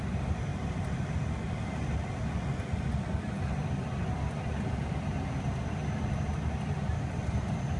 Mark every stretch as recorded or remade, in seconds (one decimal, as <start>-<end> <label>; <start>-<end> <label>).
0.0-7.8 recorded